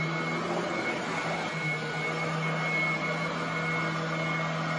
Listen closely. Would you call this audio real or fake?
real